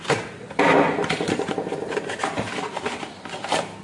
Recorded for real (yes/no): no